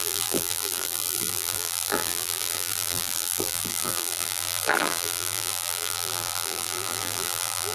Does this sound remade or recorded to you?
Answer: remade